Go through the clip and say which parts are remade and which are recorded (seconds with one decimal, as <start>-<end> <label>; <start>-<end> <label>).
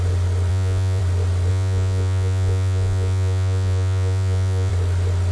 0.0-0.5 recorded; 0.5-1.0 remade; 1.0-1.5 recorded; 1.5-4.7 remade; 4.7-5.3 recorded